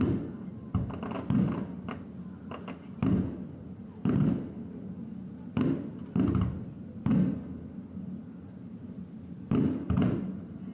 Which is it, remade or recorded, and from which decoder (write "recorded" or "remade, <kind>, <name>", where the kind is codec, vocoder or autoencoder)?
recorded